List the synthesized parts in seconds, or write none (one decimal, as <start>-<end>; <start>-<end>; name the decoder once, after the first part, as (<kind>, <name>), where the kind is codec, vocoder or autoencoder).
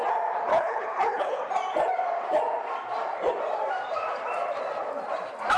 0.5-1.4 (codec, HILCodec)